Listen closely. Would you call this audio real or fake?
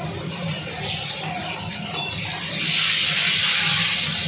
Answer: real